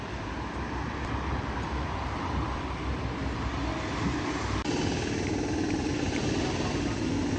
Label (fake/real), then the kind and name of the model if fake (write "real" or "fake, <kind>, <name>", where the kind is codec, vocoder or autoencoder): fake, vocoder, BigVGAN v2